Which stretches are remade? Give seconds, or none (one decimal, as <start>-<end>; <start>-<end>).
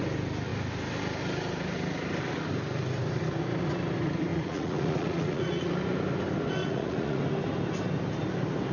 4.3-5.7; 6.6-7.2